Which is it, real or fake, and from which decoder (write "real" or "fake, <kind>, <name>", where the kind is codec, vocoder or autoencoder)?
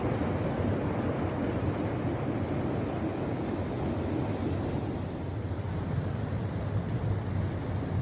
real